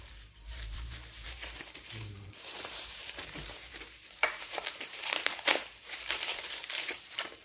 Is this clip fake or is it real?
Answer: fake